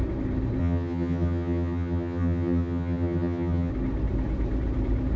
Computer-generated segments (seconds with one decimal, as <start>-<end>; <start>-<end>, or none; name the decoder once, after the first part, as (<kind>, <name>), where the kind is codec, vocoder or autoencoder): 0.6-3.7 (vocoder, HiFi-GAN)